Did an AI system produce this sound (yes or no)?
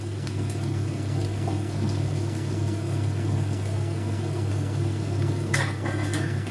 yes